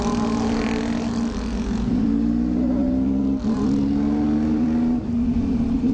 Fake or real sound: real